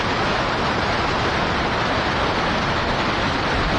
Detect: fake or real real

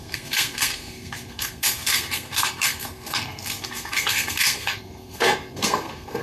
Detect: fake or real fake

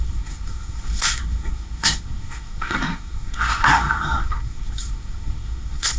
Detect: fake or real fake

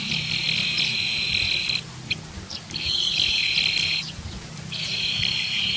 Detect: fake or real real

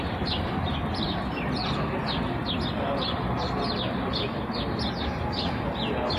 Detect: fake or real real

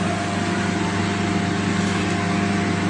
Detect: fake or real real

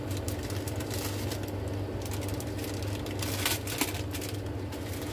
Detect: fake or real real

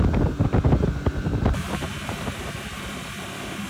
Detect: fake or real real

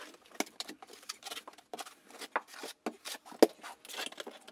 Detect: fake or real real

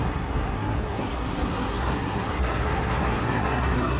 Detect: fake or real fake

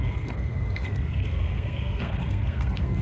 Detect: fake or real fake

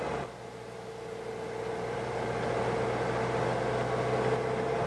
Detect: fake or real real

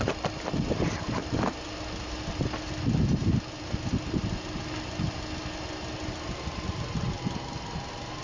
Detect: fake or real real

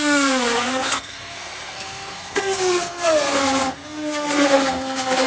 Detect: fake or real fake